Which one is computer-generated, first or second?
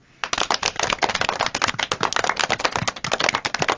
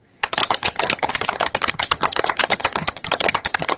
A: second